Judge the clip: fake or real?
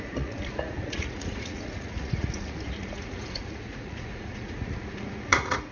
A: fake